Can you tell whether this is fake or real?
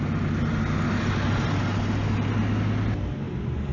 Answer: real